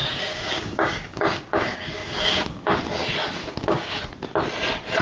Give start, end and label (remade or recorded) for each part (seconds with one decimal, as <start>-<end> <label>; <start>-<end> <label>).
0.0-2.8 remade; 2.8-3.4 recorded; 3.4-4.0 remade; 4.0-5.0 recorded